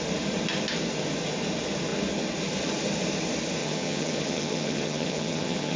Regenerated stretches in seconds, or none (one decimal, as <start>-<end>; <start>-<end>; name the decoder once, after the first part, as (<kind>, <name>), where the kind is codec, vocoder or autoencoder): 3.6-5.8 (vocoder, HiFi-GAN)